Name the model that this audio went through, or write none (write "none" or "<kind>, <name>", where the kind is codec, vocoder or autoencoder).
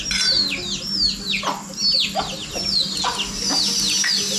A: none